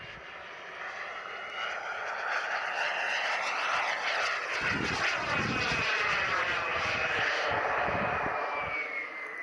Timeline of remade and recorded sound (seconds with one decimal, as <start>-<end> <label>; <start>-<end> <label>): 0.0-6.7 recorded; 6.7-8.3 remade; 8.3-9.4 recorded